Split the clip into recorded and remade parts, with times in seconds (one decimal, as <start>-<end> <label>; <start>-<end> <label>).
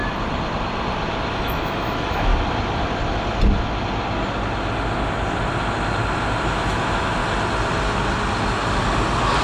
0.0-1.3 recorded; 1.3-2.3 remade; 2.3-6.5 recorded; 6.5-7.2 remade; 7.2-9.4 recorded